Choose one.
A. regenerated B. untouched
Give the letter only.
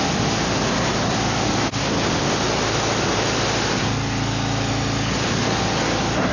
B